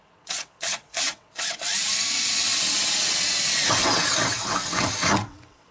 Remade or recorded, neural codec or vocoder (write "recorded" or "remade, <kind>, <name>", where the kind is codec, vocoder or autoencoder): remade, vocoder, WaveNeXt